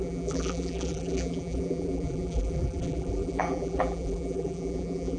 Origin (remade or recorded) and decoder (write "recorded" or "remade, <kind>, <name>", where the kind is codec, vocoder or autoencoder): remade, vocoder, BigVGAN v2